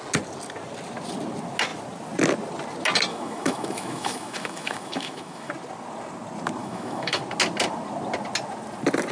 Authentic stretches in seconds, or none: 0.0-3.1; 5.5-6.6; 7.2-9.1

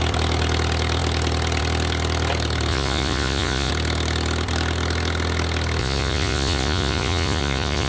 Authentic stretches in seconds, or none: 0.0-2.7; 3.7-5.8

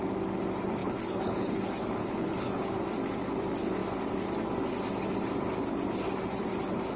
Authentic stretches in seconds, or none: 0.0-0.8; 1.6-2.0; 2.7-7.0

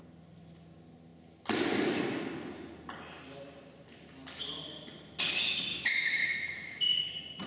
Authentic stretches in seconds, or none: 0.0-5.7; 7.1-7.5

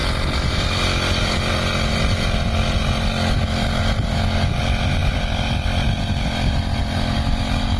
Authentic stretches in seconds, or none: 0.0-7.8